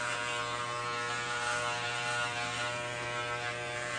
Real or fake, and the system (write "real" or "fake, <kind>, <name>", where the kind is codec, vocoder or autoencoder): fake, vocoder, BigVGAN v2